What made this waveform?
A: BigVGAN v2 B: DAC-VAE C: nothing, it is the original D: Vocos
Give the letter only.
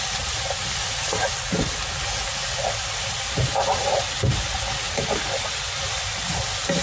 C